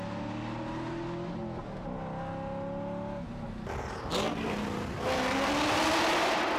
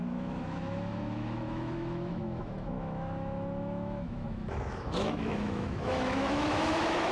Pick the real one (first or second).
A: first